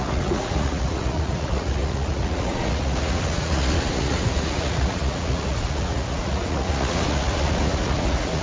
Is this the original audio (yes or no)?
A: no